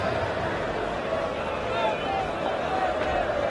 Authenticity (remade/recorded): recorded